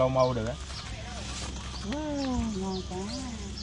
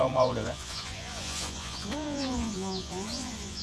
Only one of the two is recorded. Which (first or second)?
first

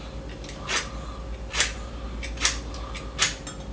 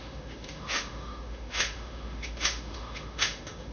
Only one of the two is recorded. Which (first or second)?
first